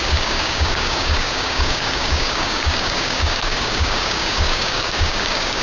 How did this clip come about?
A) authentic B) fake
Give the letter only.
B